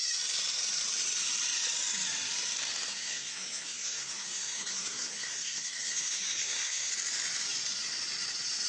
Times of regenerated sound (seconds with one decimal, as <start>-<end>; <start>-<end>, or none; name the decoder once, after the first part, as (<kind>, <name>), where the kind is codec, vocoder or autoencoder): 2.9-6.9 (codec, SNAC)